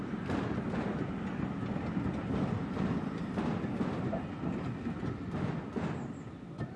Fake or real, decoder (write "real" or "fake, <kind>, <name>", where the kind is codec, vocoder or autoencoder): real